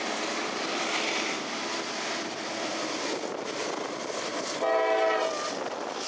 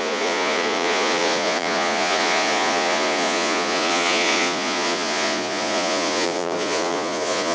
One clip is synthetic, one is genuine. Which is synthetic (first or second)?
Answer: second